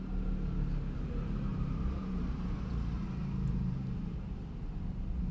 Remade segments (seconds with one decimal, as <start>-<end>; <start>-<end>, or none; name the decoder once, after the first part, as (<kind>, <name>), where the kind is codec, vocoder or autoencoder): 1.5-4.3 (vocoder, BigVGAN v2)